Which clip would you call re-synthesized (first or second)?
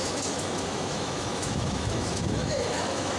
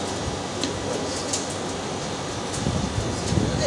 first